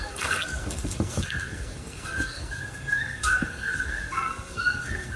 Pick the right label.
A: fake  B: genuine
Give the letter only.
A